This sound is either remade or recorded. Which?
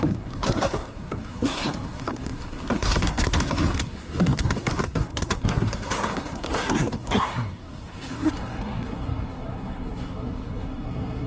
remade